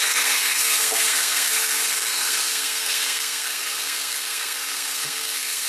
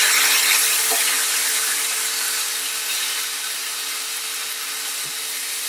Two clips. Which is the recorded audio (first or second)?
second